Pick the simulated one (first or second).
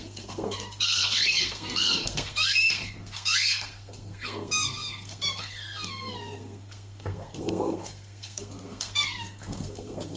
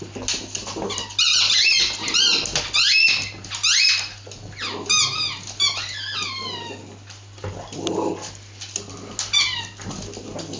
first